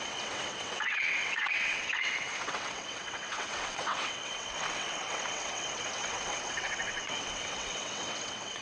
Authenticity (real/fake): fake